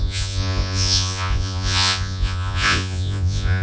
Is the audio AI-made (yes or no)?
yes